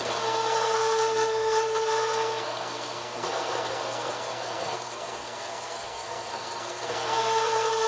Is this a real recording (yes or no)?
no